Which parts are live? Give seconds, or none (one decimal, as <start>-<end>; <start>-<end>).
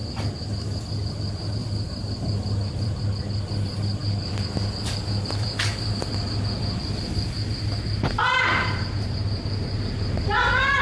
0.0-1.6; 3.0-4.0; 5.9-8.2; 8.8-10.8